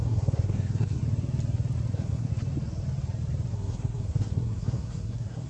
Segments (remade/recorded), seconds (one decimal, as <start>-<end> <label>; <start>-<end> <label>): 0.0-1.0 remade; 1.0-1.9 recorded; 1.9-2.3 remade; 2.3-3.5 recorded; 3.5-5.5 remade

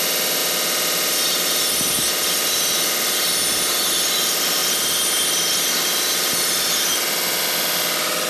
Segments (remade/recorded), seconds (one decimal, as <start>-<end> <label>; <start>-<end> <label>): 0.0-8.3 recorded

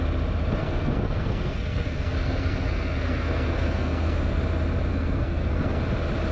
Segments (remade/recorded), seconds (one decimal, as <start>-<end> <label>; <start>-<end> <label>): 0.0-0.6 recorded; 0.6-4.4 remade; 4.4-4.9 recorded; 4.9-5.8 remade; 5.8-6.3 recorded

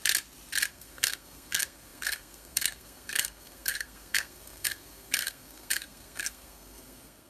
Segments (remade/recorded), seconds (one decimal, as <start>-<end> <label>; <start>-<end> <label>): 0.0-0.7 recorded; 0.7-7.3 remade

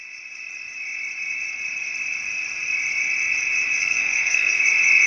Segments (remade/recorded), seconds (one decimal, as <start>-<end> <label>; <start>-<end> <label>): 0.0-3.8 recorded; 3.8-4.6 remade; 4.6-5.1 recorded

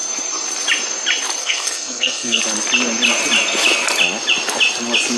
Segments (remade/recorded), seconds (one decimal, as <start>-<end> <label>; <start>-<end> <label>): 0.0-1.4 recorded; 1.4-2.4 remade; 2.4-5.2 recorded

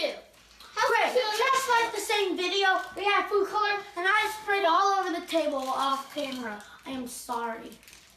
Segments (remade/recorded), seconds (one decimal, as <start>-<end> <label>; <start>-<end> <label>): 0.0-1.1 recorded; 1.1-1.9 remade; 1.9-3.7 recorded; 3.7-4.8 remade; 4.8-5.9 recorded; 5.9-6.6 remade; 6.6-8.2 recorded